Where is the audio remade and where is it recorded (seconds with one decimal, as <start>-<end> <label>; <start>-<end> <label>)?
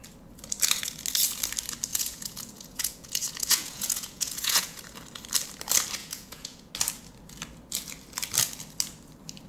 0.0-1.9 recorded; 1.9-4.8 remade; 4.8-6.0 recorded; 6.0-6.7 remade; 6.7-9.5 recorded